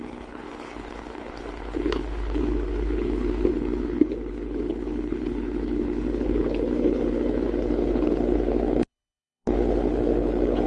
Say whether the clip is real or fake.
fake